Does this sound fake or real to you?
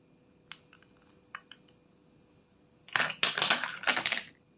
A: real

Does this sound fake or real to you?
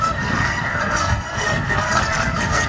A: fake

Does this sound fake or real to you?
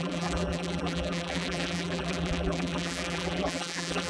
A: fake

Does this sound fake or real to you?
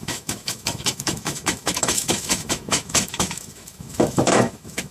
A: fake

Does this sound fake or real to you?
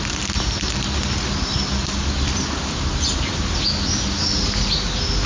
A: real